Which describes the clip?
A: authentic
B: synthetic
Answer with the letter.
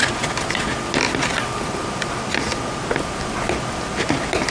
A